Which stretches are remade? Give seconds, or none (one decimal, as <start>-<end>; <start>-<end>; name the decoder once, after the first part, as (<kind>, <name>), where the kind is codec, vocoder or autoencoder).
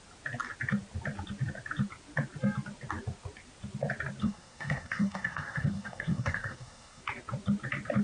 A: 4.2-7.0 (codec, SNAC)